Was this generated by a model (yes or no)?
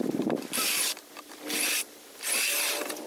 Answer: no